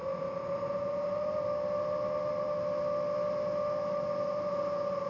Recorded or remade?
recorded